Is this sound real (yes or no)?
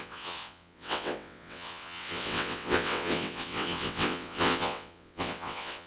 no